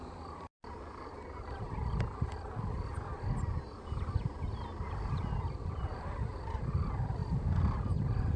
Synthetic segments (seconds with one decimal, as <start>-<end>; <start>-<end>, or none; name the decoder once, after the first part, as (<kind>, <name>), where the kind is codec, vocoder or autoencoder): 5.9-6.6 (vocoder, BigVGAN v2)